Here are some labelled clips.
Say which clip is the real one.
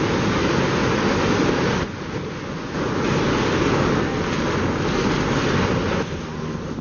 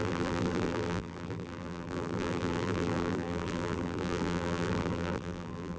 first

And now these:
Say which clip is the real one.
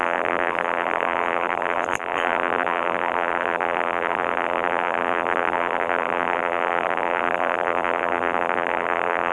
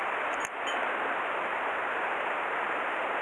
second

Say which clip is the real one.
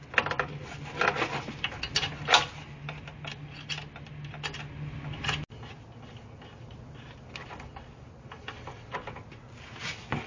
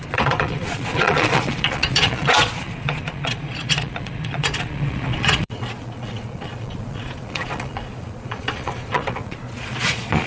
first